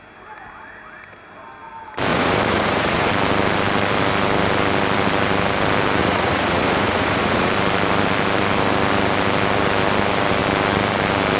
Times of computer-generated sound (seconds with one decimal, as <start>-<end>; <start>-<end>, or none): 2.1-3.1; 6.0-7.5